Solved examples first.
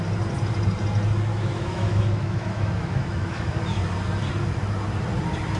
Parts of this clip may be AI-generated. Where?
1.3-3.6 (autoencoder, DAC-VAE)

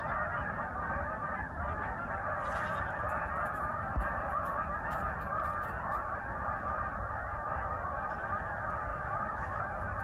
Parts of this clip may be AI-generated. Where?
8.9-9.6 (autoencoder, DAC-VAE)